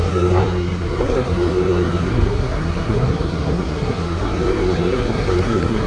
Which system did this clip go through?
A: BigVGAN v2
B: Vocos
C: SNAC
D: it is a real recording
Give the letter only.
C